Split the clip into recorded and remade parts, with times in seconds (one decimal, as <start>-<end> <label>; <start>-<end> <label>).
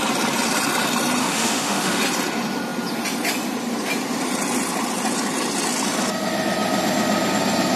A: 0.0-1.2 recorded; 1.2-2.0 remade; 2.0-7.8 recorded